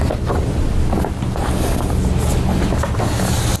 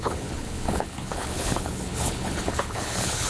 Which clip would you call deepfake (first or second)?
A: second